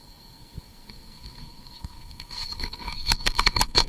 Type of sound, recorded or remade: remade